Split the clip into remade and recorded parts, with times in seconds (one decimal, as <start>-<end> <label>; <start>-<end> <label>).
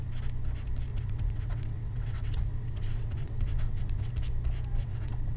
0.0-0.9 recorded; 0.9-4.1 remade; 4.1-4.7 recorded; 4.7-5.4 remade